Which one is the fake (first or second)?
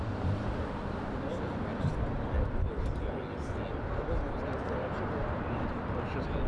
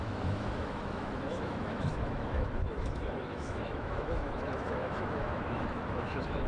second